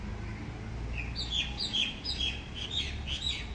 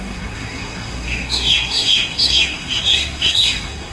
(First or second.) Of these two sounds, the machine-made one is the second